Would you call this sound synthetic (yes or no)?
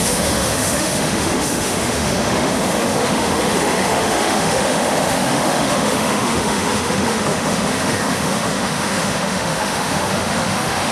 yes